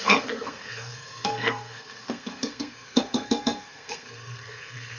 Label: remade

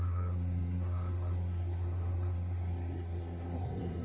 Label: remade